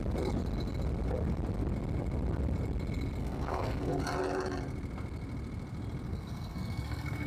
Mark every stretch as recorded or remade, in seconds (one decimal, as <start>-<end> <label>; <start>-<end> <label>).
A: 0.0-3.2 recorded; 3.2-4.0 remade; 4.0-6.1 recorded; 6.1-7.3 remade

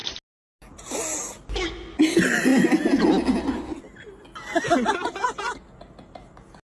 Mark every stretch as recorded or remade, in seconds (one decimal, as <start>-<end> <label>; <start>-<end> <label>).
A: 0.0-6.7 recorded

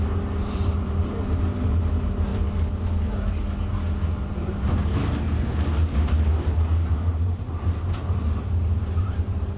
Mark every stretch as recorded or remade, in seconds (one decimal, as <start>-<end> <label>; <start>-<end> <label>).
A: 0.0-2.3 remade; 2.3-6.9 recorded; 6.9-9.6 remade

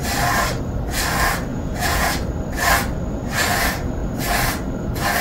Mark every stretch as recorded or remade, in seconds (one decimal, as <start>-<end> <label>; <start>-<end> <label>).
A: 0.0-1.5 recorded; 1.5-2.1 remade; 2.1-5.2 recorded

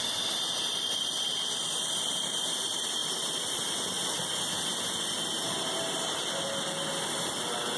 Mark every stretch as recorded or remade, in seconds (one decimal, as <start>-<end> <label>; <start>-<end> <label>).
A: 0.0-7.8 recorded